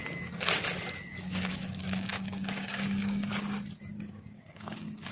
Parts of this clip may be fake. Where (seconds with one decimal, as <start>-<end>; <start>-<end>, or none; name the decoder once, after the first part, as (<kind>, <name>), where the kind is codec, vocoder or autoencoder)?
1.1-3.3 (codec, DAC); 4.1-5.1